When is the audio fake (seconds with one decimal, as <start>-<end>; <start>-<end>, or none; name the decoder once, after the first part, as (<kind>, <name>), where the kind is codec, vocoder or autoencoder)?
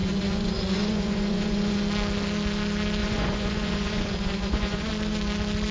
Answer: 0.0-1.8 (vocoder, Vocos); 3.0-4.9